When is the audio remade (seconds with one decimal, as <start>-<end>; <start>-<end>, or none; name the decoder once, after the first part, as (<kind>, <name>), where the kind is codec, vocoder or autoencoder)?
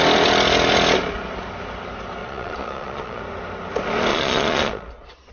2.2-3.2 (vocoder, Vocos); 4.1-5.3